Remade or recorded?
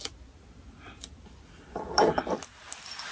recorded